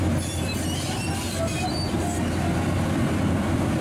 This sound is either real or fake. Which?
fake